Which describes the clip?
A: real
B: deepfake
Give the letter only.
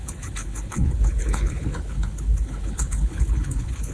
B